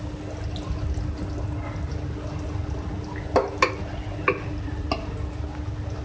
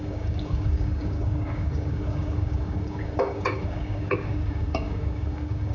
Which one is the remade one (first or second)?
second